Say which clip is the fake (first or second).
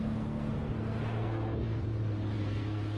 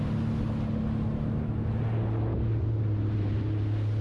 first